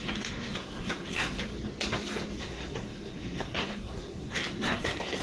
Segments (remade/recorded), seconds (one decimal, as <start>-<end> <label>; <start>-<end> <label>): 0.0-1.5 remade; 1.5-2.4 recorded; 2.4-5.2 remade